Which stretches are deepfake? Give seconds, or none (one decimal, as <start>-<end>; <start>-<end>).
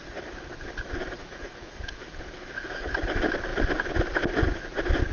1.2-2.9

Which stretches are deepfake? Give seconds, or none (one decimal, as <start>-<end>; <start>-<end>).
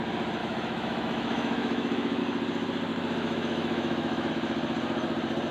0.4-2.2; 2.9-4.3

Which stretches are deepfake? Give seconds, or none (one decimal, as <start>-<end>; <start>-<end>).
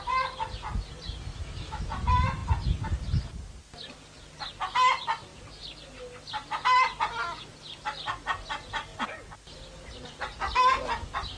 1.3-1.8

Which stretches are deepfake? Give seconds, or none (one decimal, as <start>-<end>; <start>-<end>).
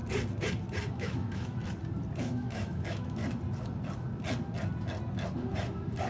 0.9-1.6; 2.2-3.2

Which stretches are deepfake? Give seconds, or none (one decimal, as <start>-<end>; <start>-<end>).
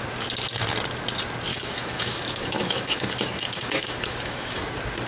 1.5-4.6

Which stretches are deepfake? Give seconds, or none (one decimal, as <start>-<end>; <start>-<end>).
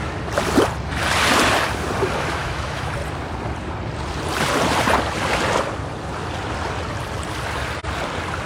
2.4-2.9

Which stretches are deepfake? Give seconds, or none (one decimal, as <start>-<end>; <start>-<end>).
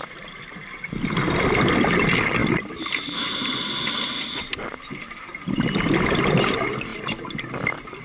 none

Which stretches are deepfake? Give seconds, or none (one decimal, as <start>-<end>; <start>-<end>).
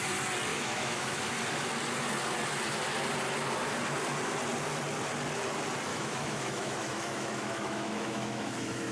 0.5-1.3; 5.9-8.9